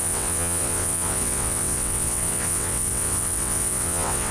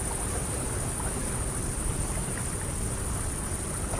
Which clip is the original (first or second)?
second